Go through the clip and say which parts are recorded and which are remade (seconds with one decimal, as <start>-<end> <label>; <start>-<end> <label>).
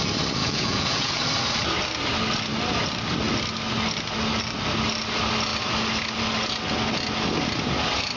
0.0-0.4 recorded; 0.4-1.2 remade; 1.2-8.2 recorded